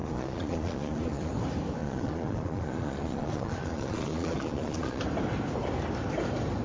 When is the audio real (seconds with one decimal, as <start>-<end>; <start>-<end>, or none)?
1.3-1.8; 5.0-6.6